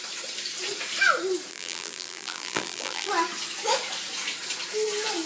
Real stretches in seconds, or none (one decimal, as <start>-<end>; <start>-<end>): 0.0-1.5; 3.1-5.3

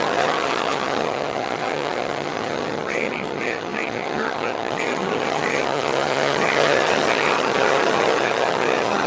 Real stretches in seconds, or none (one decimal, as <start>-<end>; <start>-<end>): none

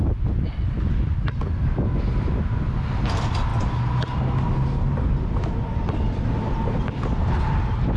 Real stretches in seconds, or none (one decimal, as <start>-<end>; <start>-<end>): 0.0-8.0

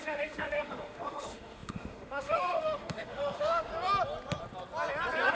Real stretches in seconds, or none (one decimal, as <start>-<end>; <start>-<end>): 3.7-5.3

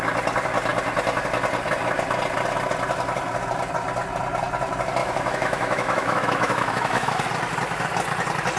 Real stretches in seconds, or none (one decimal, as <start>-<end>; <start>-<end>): 0.0-5.0; 7.2-8.6

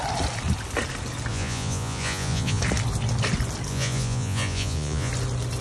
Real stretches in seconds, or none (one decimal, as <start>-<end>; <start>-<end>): 0.0-1.3; 2.6-3.7; 5.1-5.6

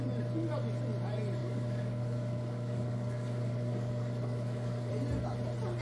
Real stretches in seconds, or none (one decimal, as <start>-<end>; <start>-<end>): 0.0-1.4; 4.9-5.8